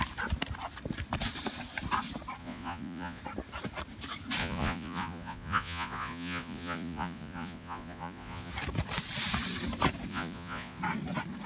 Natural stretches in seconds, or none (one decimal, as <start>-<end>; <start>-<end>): 0.0-2.4; 3.2-4.4; 8.5-10.1; 10.8-11.5